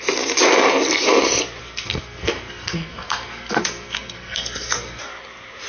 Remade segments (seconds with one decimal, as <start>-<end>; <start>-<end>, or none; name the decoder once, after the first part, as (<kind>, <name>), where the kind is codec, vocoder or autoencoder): 1.6-5.0 (codec, SNAC)